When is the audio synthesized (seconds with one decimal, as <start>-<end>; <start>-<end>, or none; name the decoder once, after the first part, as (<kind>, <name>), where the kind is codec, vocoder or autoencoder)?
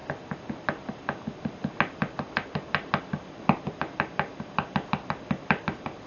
none